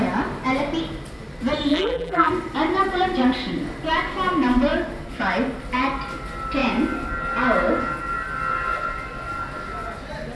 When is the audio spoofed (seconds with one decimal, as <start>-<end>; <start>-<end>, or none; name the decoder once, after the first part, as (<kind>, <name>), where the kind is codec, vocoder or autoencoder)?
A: 1.7-2.3 (vocoder, BigVGAN v2)